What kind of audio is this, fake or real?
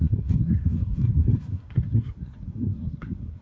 fake